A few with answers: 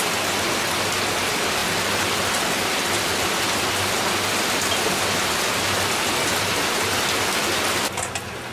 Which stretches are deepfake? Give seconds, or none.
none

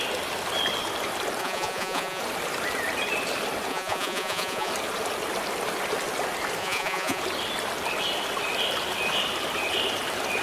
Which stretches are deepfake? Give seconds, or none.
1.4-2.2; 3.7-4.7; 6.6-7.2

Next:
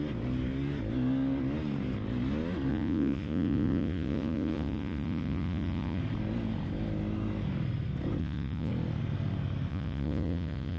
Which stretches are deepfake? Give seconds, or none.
2.7-6.0; 8.2-8.7; 9.7-10.8

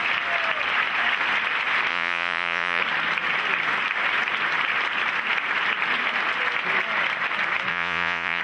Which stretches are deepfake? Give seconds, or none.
1.9-2.8; 7.7-8.4